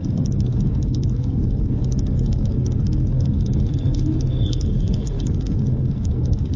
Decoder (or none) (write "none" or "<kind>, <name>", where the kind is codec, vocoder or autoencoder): codec, SNAC